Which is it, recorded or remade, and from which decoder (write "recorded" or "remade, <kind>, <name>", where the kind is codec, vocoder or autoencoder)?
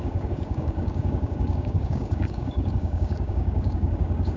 remade, codec, DAC